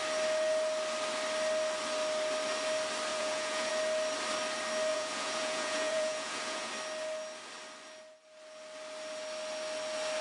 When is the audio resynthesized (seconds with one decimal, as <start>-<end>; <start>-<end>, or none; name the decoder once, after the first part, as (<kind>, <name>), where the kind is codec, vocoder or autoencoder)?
3.1-3.7 (vocoder, Vocos); 4.9-6.7